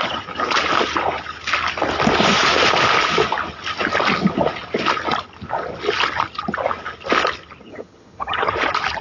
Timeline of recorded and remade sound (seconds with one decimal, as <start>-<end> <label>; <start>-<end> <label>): 0.0-7.7 recorded; 7.7-8.5 remade; 8.5-9.0 recorded